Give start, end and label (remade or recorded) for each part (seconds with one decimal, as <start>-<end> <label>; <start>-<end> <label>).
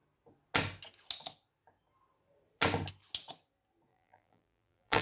0.0-3.9 recorded; 3.9-5.0 remade